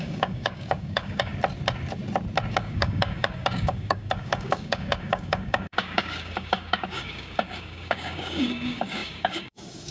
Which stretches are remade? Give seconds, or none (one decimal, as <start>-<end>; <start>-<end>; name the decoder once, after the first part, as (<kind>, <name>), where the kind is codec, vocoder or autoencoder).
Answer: 0.0-1.3 (codec, DAC); 2.5-9.9